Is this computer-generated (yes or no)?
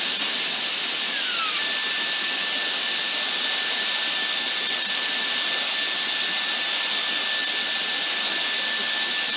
no